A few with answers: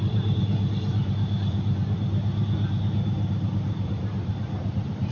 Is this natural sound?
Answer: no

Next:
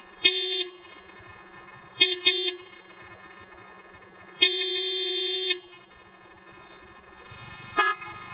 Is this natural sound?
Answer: no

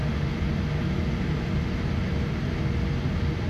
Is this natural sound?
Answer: yes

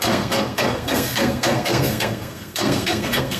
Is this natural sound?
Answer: no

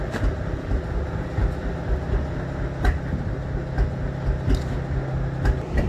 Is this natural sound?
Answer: yes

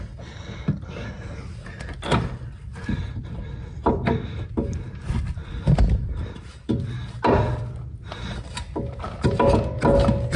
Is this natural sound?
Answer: yes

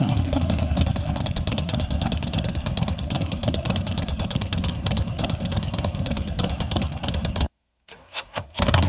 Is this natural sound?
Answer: no